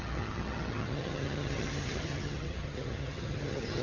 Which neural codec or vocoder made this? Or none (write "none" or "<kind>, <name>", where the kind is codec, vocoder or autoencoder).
vocoder, HiFi-GAN